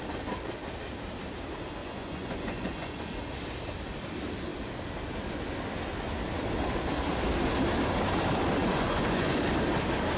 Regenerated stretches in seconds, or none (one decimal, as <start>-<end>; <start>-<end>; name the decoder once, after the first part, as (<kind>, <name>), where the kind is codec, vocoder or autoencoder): 1.8-3.3 (vocoder, Vocos); 8.6-9.4